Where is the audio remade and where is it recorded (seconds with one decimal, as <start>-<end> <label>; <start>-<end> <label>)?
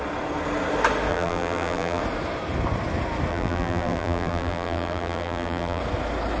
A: 0.0-1.1 recorded; 1.1-2.0 remade; 2.0-3.3 recorded; 3.3-5.8 remade; 5.8-6.4 recorded